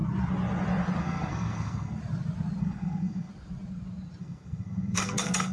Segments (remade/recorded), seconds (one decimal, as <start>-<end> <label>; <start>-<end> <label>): 0.0-1.0 recorded; 1.0-2.0 remade; 2.0-2.6 recorded; 2.6-3.3 remade; 3.3-4.2 recorded; 4.2-5.5 remade